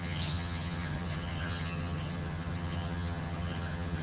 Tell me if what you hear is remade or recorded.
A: remade